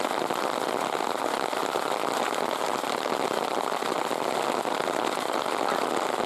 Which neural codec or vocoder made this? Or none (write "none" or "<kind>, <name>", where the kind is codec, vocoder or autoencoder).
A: none